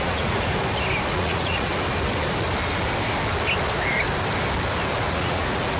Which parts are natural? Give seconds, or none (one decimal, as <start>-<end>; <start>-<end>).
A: 0.5-1.1; 1.7-4.9